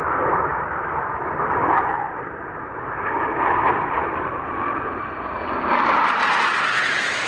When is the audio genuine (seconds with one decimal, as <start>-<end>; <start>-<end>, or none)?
0.0-7.3